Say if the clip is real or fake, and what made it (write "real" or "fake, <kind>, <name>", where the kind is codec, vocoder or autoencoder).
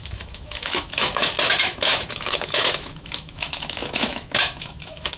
fake, autoencoder, DAC-VAE